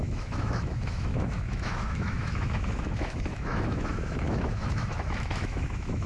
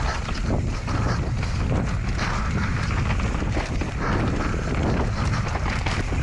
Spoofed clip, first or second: first